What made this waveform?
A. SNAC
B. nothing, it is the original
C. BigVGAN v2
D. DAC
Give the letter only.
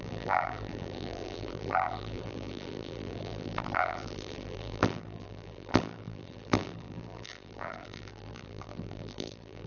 C